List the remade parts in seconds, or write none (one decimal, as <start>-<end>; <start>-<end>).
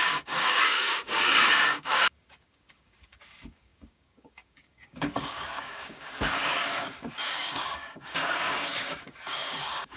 0.0-10.0